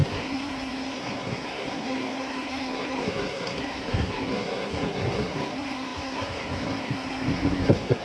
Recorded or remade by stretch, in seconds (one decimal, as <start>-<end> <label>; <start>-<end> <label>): 0.0-8.0 remade